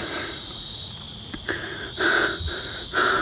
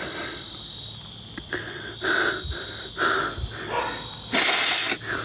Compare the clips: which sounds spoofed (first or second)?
first